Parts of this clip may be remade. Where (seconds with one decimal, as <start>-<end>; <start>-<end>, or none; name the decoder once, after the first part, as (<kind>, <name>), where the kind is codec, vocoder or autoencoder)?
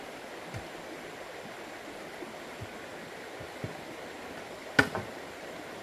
none